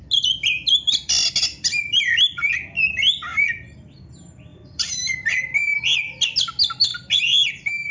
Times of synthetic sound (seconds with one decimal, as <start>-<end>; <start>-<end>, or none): 1.5-2.4; 3.3-4.0; 4.5-5.4